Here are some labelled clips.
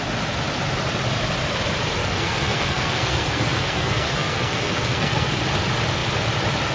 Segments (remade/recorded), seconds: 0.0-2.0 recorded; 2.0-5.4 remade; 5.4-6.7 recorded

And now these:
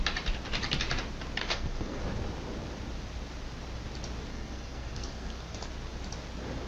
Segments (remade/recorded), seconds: 0.0-1.4 recorded; 1.4-2.0 remade; 2.0-4.3 recorded; 4.3-5.7 remade; 5.7-6.7 recorded

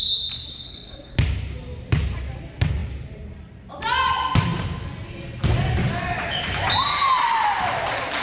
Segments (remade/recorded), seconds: 0.0-0.5 recorded; 0.5-1.1 remade; 1.1-8.2 recorded

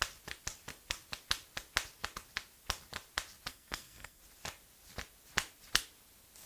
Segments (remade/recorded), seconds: 0.0-3.5 recorded; 3.5-4.2 remade; 4.2-6.5 recorded

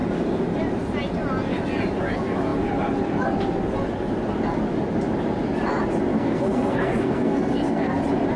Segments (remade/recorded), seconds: 0.0-6.1 recorded; 6.1-8.0 remade; 8.0-8.4 recorded

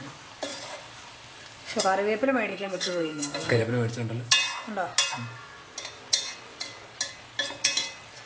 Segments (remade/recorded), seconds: 0.0-2.5 recorded; 2.5-3.6 remade; 3.6-8.3 recorded

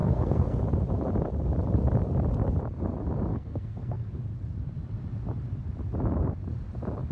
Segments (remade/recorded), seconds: 0.0-0.6 remade; 0.6-3.3 recorded; 3.3-4.2 remade; 4.2-7.1 recorded